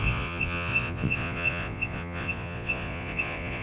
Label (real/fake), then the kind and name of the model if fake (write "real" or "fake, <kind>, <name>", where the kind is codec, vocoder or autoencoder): fake, vocoder, Vocos